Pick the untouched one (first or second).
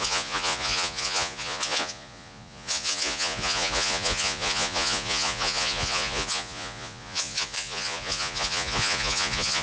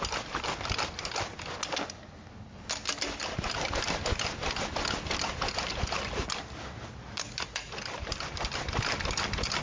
second